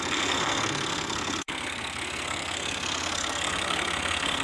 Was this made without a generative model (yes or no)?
no